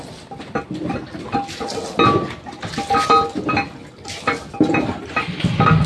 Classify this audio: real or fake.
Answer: real